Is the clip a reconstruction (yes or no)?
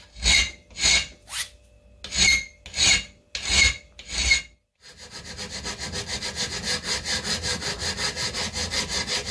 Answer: no